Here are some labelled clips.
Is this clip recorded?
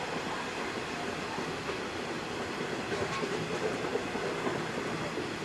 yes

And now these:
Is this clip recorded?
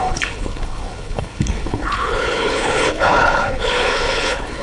no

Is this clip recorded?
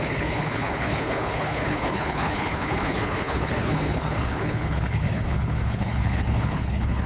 no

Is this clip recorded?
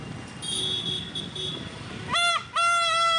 yes